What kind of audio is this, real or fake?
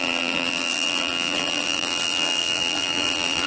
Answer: fake